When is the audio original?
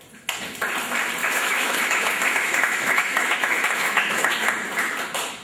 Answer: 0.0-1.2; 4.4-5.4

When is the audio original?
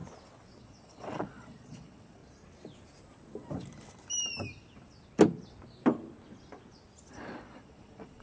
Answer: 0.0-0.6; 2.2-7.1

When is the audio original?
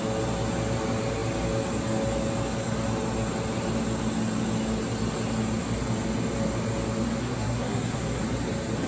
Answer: 0.0-7.2; 8.2-8.9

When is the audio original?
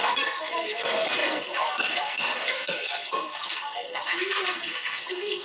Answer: none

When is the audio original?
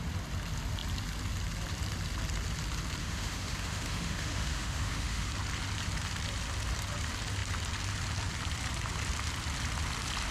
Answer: 0.0-3.0; 5.3-10.3